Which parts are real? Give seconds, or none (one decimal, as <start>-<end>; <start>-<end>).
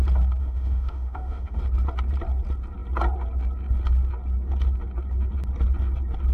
0.0-0.4; 1.6-6.3